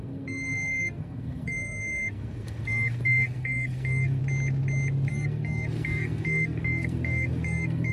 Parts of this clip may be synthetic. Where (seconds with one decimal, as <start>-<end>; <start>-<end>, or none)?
0.0-4.2; 5.1-7.9